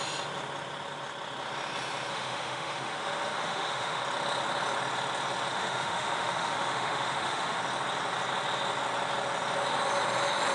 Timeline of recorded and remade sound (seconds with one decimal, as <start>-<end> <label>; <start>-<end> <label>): 0.0-2.1 recorded; 2.1-4.0 remade; 4.0-5.5 recorded; 5.5-7.6 remade; 7.6-10.5 recorded